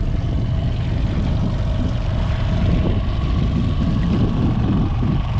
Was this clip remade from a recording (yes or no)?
no